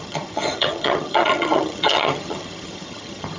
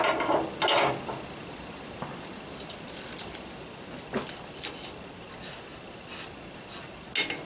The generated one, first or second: first